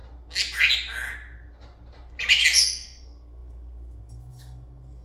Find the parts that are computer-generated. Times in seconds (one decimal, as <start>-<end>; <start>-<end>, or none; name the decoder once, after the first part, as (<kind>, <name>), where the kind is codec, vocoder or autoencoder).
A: 2.6-5.0 (codec, SNAC)